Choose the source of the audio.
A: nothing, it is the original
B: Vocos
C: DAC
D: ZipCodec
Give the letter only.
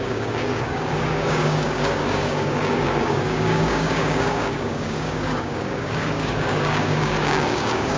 C